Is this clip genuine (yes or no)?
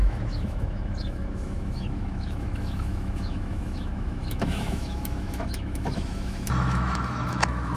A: no